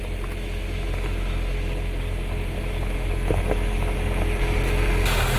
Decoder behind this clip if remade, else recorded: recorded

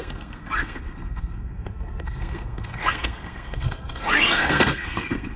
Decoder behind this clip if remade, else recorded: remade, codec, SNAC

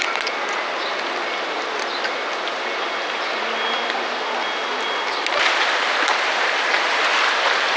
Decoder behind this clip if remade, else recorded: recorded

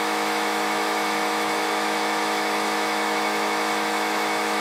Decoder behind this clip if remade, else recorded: remade, autoencoder, DAC-VAE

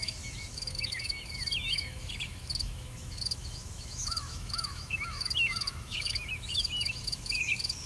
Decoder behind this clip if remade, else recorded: remade, autoencoder, DAC-VAE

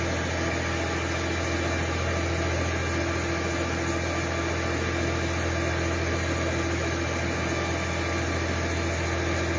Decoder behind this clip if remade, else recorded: recorded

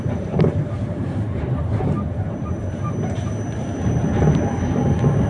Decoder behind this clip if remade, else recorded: remade, vocoder, BigVGAN v2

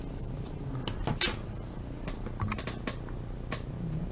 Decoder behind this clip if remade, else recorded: recorded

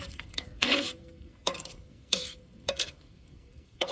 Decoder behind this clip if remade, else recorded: remade, codec, SNAC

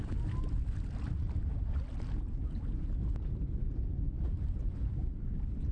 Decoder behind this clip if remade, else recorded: recorded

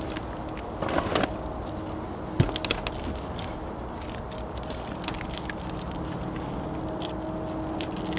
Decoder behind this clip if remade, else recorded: recorded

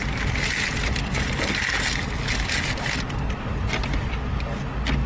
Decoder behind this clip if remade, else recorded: recorded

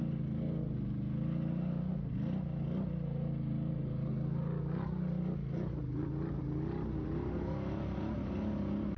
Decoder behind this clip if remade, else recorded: recorded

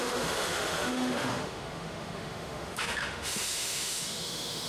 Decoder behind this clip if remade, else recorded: remade, autoencoder, DAC-VAE